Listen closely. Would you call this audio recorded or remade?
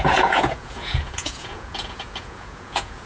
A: remade